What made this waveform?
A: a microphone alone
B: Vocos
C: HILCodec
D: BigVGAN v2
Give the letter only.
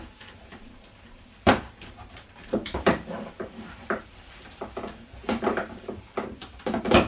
D